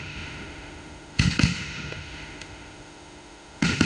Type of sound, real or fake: fake